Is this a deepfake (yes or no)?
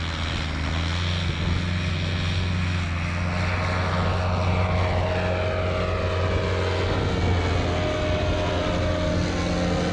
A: no